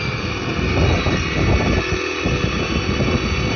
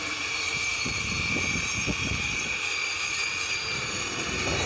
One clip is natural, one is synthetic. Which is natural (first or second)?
first